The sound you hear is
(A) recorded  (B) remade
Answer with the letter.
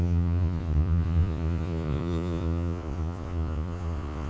B